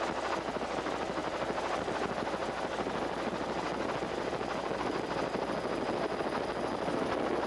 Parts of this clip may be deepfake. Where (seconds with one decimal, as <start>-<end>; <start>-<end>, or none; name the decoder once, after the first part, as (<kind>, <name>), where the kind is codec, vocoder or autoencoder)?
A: none